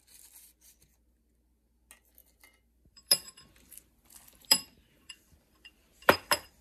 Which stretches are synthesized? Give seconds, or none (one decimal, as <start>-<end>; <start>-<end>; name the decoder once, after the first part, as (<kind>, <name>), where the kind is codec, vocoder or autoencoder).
2.2-6.6 (vocoder, BigVGAN v2)